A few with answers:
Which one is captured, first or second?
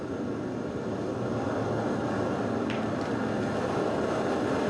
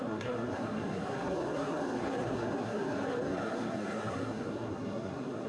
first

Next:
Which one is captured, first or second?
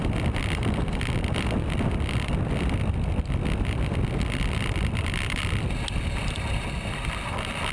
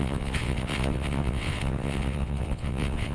first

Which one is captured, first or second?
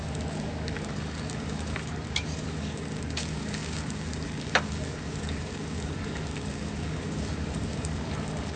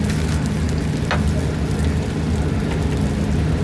second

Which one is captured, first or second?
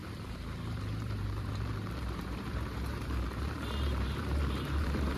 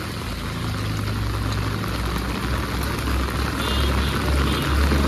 second